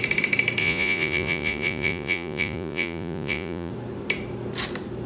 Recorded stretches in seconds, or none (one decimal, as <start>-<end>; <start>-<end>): 0.0-0.6; 3.7-5.1